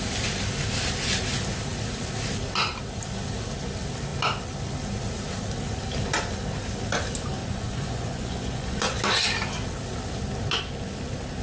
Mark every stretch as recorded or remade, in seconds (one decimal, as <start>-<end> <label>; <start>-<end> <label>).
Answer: 0.0-7.4 recorded; 7.4-9.0 remade; 9.0-11.4 recorded